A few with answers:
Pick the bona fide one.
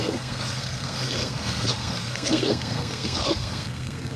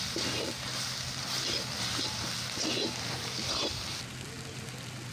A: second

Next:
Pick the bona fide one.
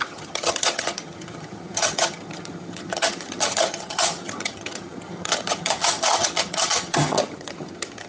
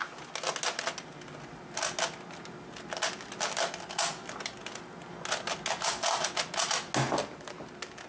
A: second